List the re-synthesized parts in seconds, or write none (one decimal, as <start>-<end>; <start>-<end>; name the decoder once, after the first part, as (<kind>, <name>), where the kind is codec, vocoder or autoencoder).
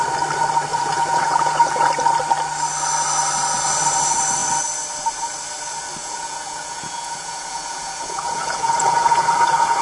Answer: 0.7-1.9 (vocoder, Vocos); 6.0-9.8